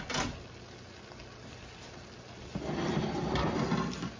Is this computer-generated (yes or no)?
no